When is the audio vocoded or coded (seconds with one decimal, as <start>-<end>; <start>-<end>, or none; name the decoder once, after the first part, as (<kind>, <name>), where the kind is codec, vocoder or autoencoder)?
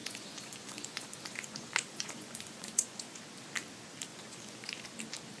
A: 0.0-3.2 (vocoder, Vocos); 4.1-4.9